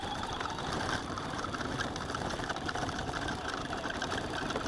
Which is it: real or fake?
fake